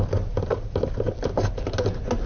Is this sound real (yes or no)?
yes